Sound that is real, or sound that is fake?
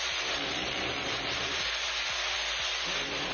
real